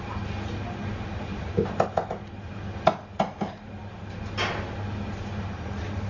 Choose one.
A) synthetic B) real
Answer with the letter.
B